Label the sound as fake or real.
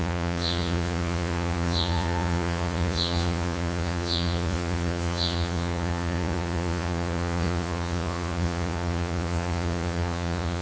fake